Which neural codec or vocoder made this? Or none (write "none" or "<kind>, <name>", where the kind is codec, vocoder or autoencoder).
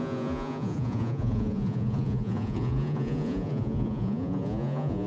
vocoder, Vocos